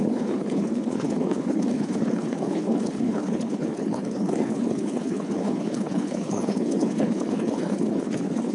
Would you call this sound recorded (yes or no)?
no